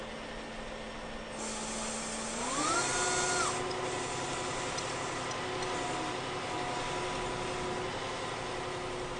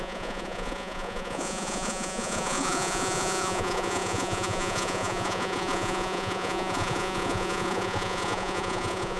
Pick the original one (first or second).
first